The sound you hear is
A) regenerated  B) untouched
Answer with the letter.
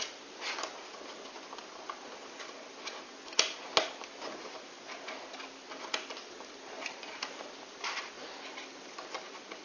B